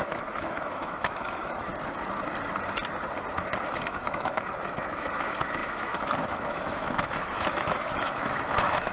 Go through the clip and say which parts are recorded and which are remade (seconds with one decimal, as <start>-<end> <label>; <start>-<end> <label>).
0.0-1.7 remade; 1.7-3.7 recorded; 3.7-8.9 remade